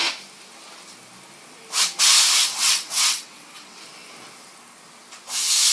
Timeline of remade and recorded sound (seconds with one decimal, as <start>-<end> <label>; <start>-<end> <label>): 0.0-2.4 recorded; 2.4-3.8 remade; 3.8-5.7 recorded